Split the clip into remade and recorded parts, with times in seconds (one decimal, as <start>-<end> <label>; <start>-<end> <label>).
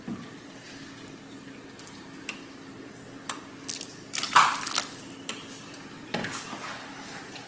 0.0-7.5 recorded